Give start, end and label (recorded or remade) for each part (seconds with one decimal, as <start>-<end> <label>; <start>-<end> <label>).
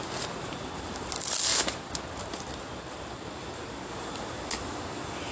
0.0-5.3 recorded